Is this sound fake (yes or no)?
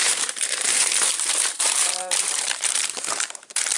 yes